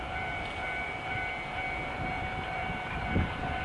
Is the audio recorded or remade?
remade